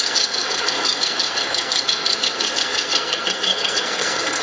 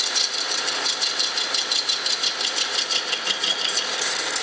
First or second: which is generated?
first